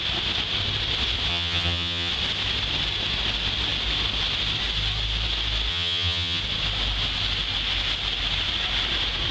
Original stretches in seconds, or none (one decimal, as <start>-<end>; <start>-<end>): 0.0-1.3; 2.1-5.7; 6.4-9.3